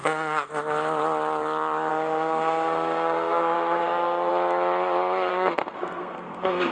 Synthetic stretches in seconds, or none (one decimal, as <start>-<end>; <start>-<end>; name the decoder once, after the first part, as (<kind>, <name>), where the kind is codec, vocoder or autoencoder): 0.0-0.5 (codec, SNAC); 1.9-4.3; 5.3-6.7